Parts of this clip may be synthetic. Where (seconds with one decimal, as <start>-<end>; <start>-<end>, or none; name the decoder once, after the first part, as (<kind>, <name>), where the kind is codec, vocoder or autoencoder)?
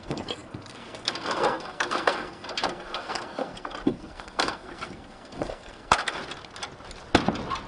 0.0-6.2 (codec, SNAC)